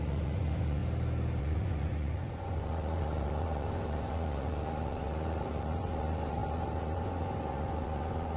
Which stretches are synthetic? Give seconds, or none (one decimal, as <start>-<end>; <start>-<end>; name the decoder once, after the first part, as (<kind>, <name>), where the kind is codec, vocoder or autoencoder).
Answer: 0.0-0.8 (vocoder, Vocos); 1.4-8.4